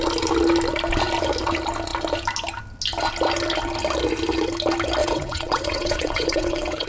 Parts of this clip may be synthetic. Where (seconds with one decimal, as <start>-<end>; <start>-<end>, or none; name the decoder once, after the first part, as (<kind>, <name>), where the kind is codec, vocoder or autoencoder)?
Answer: 5.0-6.9 (vocoder, WaveNeXt)